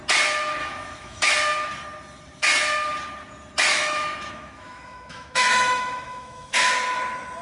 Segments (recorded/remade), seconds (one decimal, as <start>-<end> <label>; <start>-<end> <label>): 0.0-0.6 recorded; 0.6-1.3 remade; 1.3-3.7 recorded; 3.7-6.7 remade; 6.7-7.4 recorded